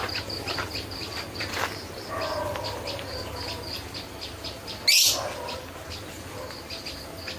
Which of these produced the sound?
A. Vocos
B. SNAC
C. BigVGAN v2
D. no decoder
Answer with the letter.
D